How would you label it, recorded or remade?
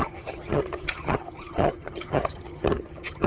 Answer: remade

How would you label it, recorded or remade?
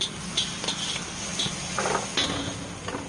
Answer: recorded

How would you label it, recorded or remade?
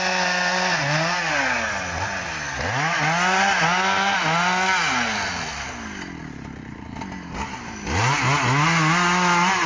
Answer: recorded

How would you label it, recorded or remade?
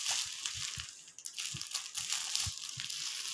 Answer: recorded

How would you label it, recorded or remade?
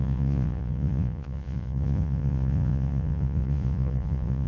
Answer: remade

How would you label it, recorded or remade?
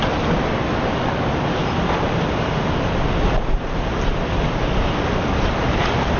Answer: recorded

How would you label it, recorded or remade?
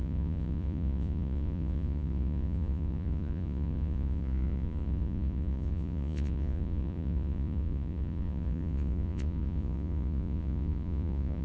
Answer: remade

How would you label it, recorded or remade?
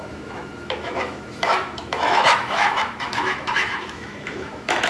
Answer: remade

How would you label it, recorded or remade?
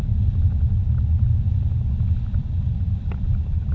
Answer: recorded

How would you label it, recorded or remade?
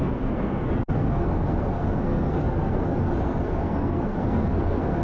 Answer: remade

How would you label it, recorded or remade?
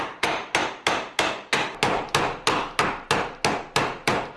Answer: remade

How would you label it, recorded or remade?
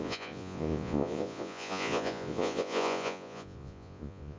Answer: remade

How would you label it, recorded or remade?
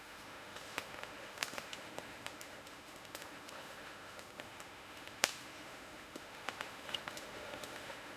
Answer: remade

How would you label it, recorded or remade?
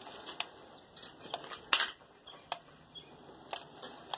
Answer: recorded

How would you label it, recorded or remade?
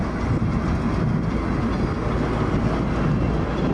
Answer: recorded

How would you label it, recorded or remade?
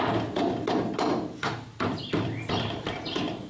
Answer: recorded